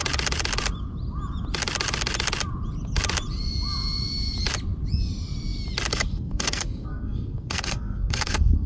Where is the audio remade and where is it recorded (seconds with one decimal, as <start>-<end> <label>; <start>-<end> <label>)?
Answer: 0.0-5.9 recorded; 5.9-8.7 remade